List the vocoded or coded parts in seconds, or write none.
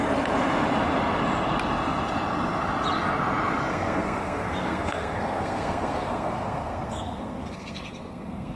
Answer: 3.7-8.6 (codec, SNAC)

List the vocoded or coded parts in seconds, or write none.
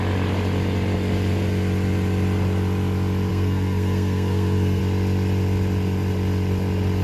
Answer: 3.3-4.8 (codec, SNAC)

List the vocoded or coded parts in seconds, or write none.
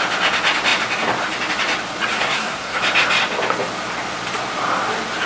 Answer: 2.1-2.8 (codec, SNAC)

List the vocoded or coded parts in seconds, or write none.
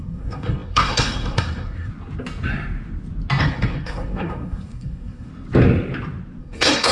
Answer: 0.0-1.9 (codec, SNAC); 3.4-5.3; 6.4-6.9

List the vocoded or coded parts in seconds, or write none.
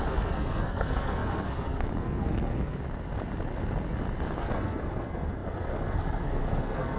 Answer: 0.0-2.8 (codec, SNAC); 4.4-7.0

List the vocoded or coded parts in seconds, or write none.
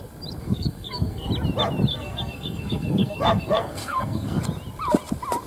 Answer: 0.4-1.3 (codec, SNAC); 1.9-4.4